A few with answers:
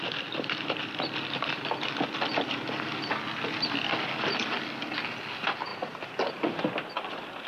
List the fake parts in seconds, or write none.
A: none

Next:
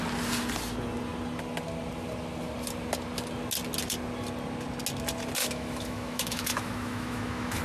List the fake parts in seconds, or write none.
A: 5.4-7.6 (autoencoder, DAC-VAE)

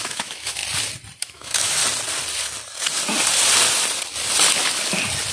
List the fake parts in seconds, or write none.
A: 0.0-0.6 (autoencoder, DAC-VAE); 1.2-1.8

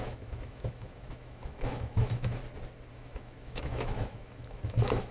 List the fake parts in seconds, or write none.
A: 0.0-2.4 (autoencoder, DAC-VAE); 2.9-5.1

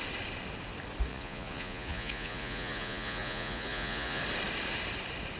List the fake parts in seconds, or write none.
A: 1.1-4.2 (vocoder, Vocos)

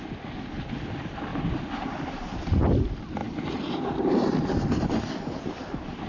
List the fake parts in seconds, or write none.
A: none